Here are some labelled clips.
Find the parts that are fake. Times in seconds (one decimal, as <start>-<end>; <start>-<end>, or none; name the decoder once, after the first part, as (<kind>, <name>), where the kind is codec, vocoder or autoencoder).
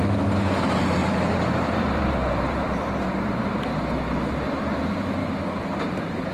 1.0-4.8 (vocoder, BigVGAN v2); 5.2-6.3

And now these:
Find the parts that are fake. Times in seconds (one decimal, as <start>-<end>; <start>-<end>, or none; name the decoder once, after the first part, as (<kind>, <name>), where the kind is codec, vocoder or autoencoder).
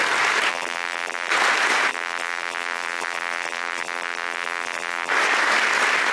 0.5-1.3 (vocoder, BigVGAN v2); 1.9-5.1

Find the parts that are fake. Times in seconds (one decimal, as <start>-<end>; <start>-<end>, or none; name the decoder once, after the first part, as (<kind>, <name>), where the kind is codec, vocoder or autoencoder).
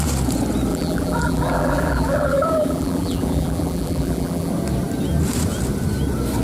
0.7-4.5 (vocoder, BigVGAN v2)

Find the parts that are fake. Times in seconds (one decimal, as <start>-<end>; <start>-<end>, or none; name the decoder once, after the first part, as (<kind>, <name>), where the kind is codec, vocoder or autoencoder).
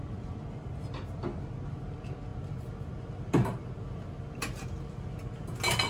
none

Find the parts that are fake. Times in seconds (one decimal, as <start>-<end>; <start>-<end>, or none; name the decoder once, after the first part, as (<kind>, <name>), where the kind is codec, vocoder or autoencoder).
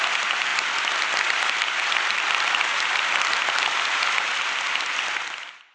0.5-3.9 (vocoder, BigVGAN v2)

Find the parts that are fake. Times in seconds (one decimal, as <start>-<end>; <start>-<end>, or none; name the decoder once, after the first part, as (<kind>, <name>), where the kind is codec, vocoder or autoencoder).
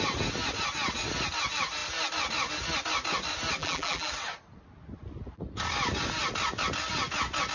3.6-4.1 (vocoder, BigVGAN v2)